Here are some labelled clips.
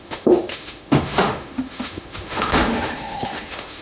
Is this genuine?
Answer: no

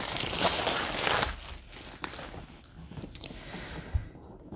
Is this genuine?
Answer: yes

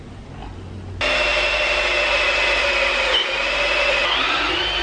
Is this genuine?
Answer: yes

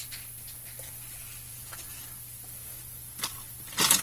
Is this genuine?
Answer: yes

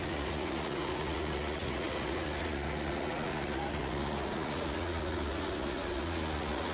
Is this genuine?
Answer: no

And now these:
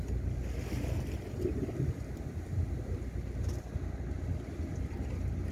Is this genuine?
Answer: yes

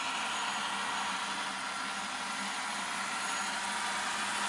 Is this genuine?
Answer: yes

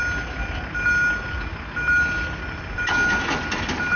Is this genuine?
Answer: yes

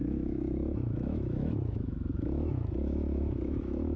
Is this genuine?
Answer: no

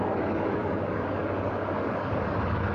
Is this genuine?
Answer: no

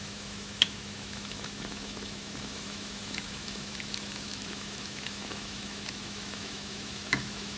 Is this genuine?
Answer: no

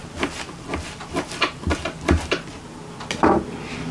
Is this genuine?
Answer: yes